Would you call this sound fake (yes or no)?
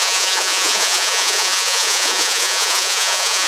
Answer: yes